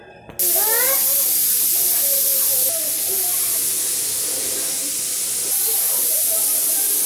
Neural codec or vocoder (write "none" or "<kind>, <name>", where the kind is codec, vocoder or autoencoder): none